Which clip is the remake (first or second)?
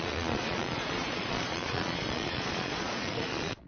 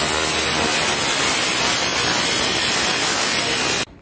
first